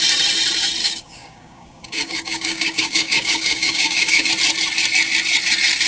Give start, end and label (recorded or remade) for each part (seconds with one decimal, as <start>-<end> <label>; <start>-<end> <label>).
0.0-0.8 recorded; 0.8-4.3 remade; 4.3-5.9 recorded